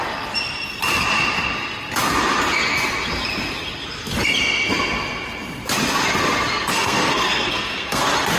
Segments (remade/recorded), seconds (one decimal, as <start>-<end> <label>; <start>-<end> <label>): 0.0-6.7 recorded; 6.7-8.0 remade; 8.0-8.4 recorded